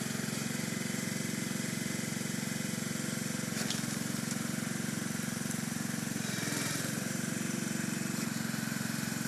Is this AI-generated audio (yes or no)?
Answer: yes